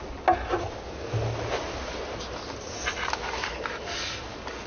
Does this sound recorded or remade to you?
recorded